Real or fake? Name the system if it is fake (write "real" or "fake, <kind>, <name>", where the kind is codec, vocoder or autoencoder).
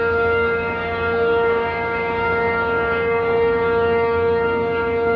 fake, codec, DAC